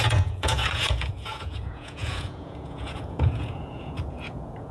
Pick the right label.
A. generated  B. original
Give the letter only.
A